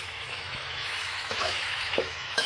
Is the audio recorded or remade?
remade